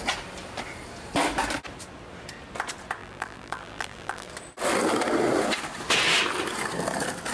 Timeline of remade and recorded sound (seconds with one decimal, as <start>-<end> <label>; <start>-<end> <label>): 0.0-3.0 recorded; 3.0-4.3 remade; 4.3-7.3 recorded